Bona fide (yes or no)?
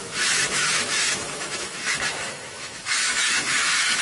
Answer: no